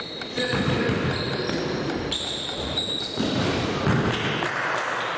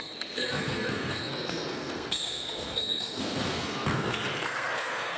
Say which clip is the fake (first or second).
second